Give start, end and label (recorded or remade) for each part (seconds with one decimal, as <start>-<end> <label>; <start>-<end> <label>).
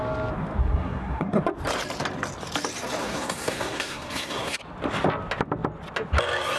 0.0-0.6 recorded; 0.6-1.4 remade; 1.4-3.0 recorded; 3.0-4.6 remade; 4.6-6.6 recorded